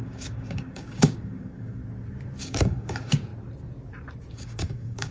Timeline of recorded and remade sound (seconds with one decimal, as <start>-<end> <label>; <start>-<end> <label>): 0.0-1.8 remade; 1.8-2.4 recorded; 2.4-3.3 remade; 3.3-4.3 recorded; 4.3-5.1 remade